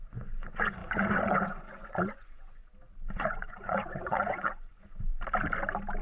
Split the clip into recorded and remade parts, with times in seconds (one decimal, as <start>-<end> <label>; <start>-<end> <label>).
0.0-2.6 remade; 2.6-3.1 recorded; 3.1-5.1 remade; 5.1-6.0 recorded